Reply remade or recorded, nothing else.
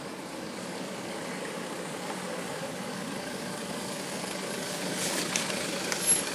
remade